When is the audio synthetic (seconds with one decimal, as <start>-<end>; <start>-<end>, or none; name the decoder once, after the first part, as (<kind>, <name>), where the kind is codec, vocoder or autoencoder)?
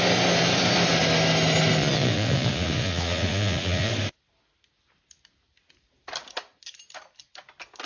1.8-3.9 (vocoder, Vocos)